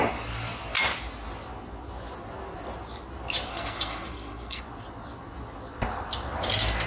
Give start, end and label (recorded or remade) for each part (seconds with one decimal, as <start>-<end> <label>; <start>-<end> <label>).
0.0-3.5 recorded; 3.5-4.6 remade; 4.6-6.9 recorded

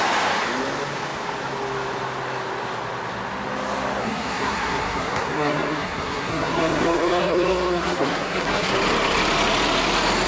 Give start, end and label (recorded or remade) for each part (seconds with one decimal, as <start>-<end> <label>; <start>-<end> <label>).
0.0-4.0 recorded; 4.0-8.7 remade; 8.7-10.3 recorded

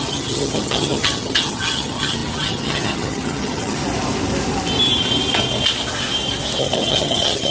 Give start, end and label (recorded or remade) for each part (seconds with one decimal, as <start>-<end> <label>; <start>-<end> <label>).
0.0-3.8 remade; 3.8-6.6 recorded; 6.6-7.5 remade

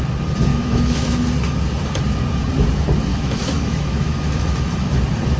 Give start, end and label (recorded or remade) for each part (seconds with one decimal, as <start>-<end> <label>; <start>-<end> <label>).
0.0-0.5 recorded; 0.5-1.2 remade; 1.2-3.1 recorded; 3.1-5.0 remade; 5.0-5.4 recorded

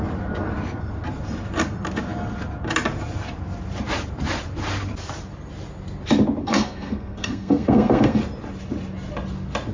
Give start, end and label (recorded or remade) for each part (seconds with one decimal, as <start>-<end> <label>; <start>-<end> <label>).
0.0-6.4 recorded; 6.4-8.2 remade; 8.2-9.7 recorded

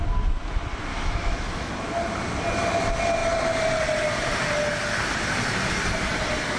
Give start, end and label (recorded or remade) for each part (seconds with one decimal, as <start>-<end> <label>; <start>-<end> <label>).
0.0-0.9 recorded; 0.9-1.7 remade; 1.7-6.6 recorded